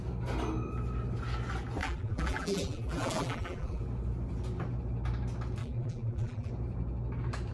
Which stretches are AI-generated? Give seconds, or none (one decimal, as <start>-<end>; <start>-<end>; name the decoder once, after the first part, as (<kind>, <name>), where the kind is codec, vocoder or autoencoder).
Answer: 1.8-3.8 (vocoder, BigVGAN v2); 5.6-6.5